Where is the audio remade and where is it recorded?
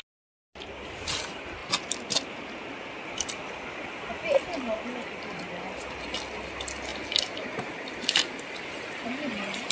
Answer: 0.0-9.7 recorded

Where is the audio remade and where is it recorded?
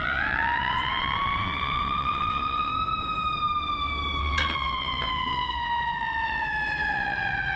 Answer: 0.0-2.7 remade; 2.7-4.2 recorded; 4.2-7.6 remade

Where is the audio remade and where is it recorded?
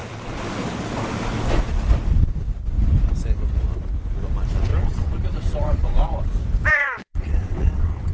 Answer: 0.0-4.7 recorded; 4.7-6.2 remade; 6.2-6.7 recorded; 6.7-8.1 remade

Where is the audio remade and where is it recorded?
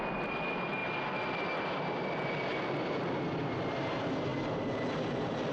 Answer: 0.0-5.5 recorded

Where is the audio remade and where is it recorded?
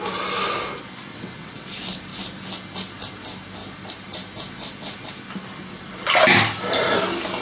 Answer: 0.0-1.1 recorded; 1.1-1.7 remade; 1.7-7.4 recorded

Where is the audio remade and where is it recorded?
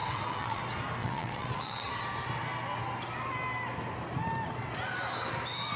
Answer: 0.0-0.6 remade; 0.6-1.0 recorded; 1.0-1.9 remade; 1.9-5.8 recorded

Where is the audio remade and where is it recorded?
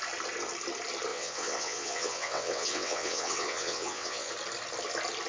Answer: 0.0-1.1 recorded; 1.1-4.3 remade; 4.3-5.3 recorded